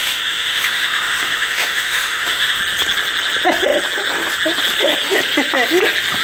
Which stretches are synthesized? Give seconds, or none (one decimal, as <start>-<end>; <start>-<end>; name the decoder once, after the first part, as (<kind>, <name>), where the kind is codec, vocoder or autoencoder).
0.0-2.6 (autoencoder, DAC-VAE)